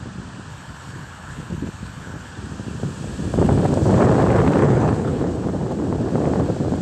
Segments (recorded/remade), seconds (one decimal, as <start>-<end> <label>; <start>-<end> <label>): 0.0-0.5 recorded; 0.5-2.3 remade; 2.3-4.6 recorded; 4.6-5.3 remade; 5.3-6.8 recorded